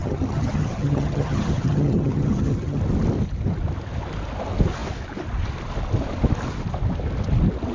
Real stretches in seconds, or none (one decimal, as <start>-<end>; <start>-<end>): 2.8-7.7